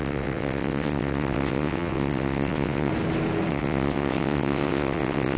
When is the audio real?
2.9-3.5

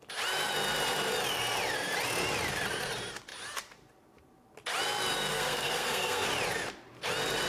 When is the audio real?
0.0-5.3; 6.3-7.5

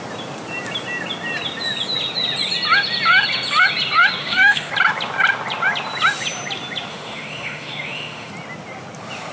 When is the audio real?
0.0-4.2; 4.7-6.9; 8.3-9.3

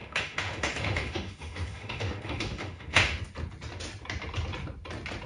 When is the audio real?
3.2-5.3